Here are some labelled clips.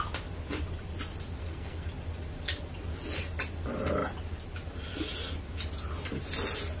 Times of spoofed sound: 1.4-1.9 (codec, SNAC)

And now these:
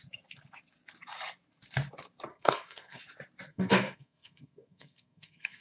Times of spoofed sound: 2.3-3.0 (codec, SNAC); 3.5-5.6

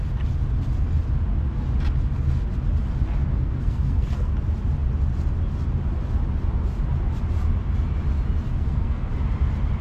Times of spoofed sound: 3.2-4.3 (codec, SNAC); 8.5-9.1

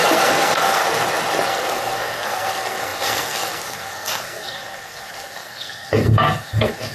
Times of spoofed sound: 0.0-0.8 (codec, SNAC); 1.5-6.9

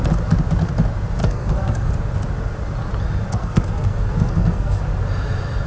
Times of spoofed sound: 1.2-1.9 (codec, SNAC); 3.4-4.8

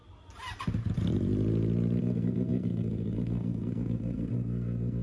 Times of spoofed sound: 2.0-5.0 (codec, SNAC)

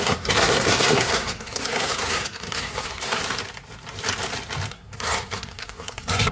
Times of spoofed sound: 0.0-3.2 (codec, SNAC); 4.7-6.3

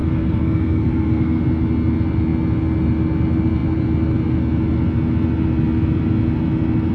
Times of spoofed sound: 0.0-1.4 (codec, SNAC)